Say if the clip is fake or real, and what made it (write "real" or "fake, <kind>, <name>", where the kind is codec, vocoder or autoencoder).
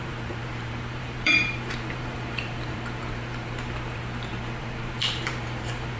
fake, vocoder, BigVGAN v2